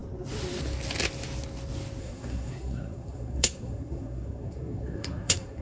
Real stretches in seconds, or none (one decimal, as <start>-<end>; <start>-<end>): 0.0-2.0